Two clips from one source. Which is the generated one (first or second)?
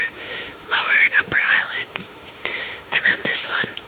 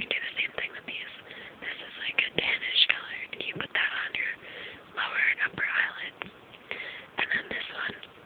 first